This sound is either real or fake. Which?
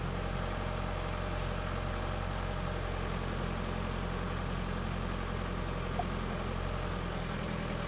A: real